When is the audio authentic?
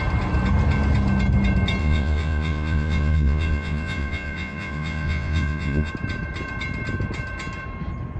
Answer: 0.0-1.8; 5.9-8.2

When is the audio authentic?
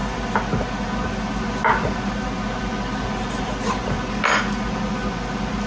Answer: 0.0-5.7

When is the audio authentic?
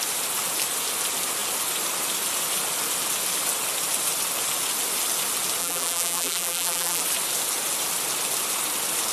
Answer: 0.0-5.6; 7.0-9.1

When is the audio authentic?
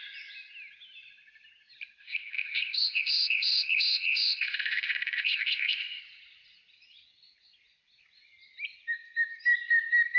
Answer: 0.0-2.0; 6.0-10.2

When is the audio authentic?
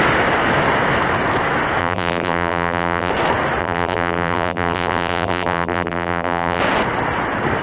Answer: 0.0-1.8; 3.1-3.6; 6.6-7.6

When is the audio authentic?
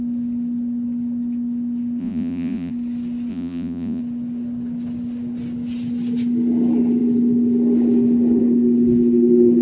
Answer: 0.0-2.0; 2.7-3.3; 4.0-9.6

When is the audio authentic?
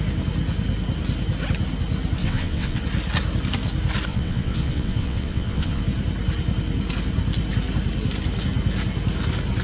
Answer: 0.0-2.2; 2.8-4.1; 5.8-9.6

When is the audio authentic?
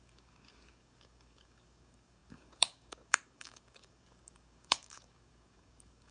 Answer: none